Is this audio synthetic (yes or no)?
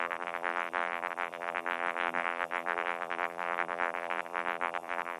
yes